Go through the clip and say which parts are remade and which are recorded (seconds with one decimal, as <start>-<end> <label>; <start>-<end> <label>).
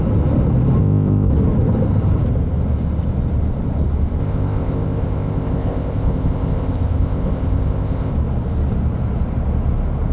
0.0-0.8 recorded; 0.8-1.3 remade; 1.3-4.2 recorded; 4.2-8.1 remade; 8.1-10.1 recorded